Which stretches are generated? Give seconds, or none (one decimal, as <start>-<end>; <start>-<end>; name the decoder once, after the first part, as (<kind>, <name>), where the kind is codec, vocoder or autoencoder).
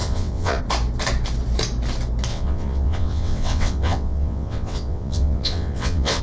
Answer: 0.0-0.6 (vocoder, WaveNeXt); 2.3-6.2